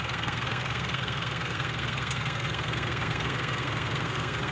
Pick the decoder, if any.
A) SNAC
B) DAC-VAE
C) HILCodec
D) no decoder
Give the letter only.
A